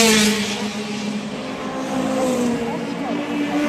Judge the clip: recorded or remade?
remade